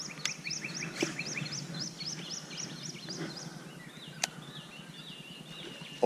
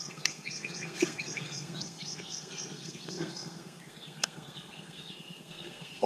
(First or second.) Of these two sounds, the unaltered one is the first